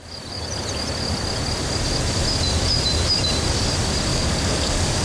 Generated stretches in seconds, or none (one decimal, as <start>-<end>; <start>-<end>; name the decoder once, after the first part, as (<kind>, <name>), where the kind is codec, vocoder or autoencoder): 4.1-5.0 (codec, DAC)

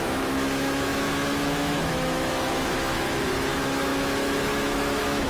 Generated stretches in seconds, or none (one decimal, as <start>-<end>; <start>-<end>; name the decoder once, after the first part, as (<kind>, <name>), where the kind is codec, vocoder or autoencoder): 0.0-5.3 (autoencoder, DAC-VAE)

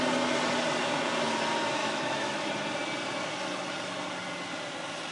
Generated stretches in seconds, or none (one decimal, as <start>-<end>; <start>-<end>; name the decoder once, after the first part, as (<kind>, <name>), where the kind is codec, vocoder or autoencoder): 1.8-2.5 (autoencoder, DAC-VAE)